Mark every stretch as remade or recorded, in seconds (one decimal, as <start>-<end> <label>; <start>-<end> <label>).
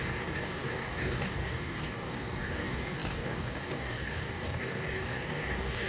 0.0-5.9 remade